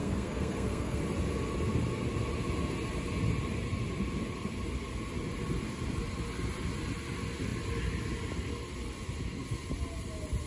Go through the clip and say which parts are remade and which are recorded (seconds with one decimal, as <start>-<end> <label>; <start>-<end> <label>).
0.0-1.0 remade; 1.0-10.5 recorded